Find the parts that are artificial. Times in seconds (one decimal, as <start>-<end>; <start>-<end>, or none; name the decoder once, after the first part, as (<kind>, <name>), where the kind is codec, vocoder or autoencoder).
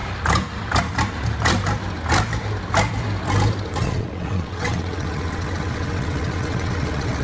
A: 3.7-7.2 (vocoder, WaveNeXt)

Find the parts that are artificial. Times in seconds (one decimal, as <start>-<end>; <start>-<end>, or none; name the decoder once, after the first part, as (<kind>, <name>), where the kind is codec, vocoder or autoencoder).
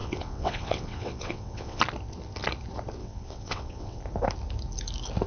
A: 0.0-1.8 (vocoder, WaveNeXt); 3.0-4.0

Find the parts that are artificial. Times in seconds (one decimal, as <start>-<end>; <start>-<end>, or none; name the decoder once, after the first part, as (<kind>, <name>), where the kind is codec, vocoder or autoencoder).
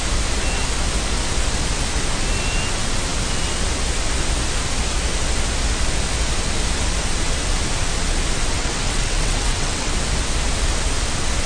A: 8.6-9.9 (vocoder, WaveNeXt)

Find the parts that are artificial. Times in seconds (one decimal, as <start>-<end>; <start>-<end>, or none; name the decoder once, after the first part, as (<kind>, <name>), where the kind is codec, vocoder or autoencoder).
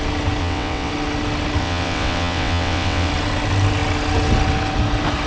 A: 0.4-0.9 (vocoder, WaveNeXt); 1.6-3.1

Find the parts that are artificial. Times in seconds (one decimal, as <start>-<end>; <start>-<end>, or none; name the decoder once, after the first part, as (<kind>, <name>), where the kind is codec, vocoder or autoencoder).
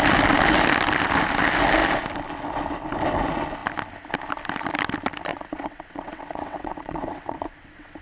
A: 5.3-8.0 (vocoder, WaveNeXt)